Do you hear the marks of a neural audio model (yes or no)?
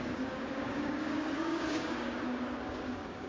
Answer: yes